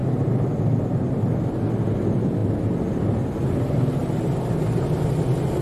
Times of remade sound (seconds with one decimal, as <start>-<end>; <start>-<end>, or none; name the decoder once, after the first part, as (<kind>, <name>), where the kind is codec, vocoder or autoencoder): none